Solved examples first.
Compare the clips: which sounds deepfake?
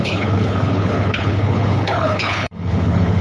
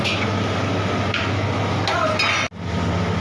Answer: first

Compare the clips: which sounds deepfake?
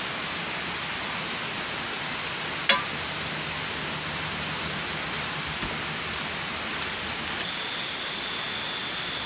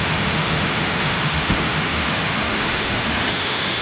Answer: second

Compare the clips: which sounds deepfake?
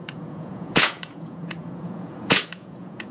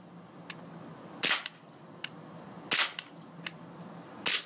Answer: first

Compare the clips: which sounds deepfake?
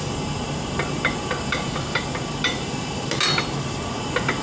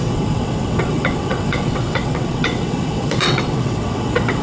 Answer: second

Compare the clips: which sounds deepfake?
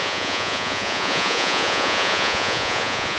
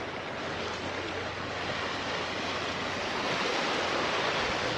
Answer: first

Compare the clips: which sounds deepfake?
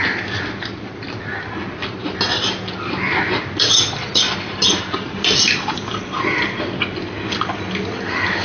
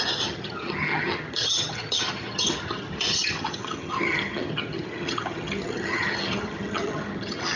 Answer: second